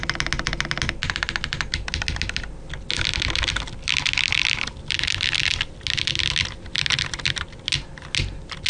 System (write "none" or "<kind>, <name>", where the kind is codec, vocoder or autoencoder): none